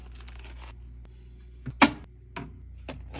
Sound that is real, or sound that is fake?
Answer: real